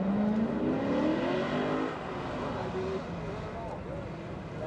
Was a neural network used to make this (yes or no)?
no